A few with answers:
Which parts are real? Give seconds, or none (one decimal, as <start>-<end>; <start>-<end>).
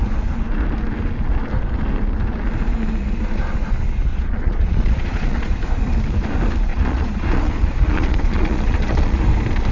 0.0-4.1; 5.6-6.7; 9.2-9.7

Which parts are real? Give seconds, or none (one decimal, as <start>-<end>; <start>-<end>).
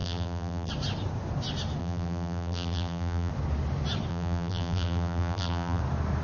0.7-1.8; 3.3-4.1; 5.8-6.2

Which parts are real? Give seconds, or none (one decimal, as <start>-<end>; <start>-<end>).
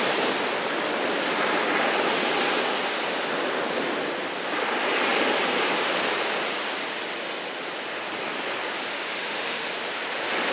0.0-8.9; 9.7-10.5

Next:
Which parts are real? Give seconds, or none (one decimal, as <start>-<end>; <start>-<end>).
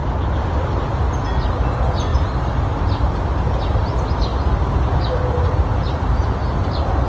0.0-7.1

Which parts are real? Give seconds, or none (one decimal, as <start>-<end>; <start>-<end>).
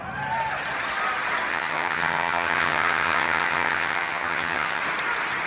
0.0-1.5; 4.8-5.5